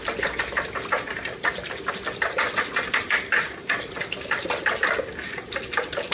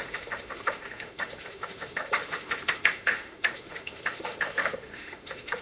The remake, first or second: second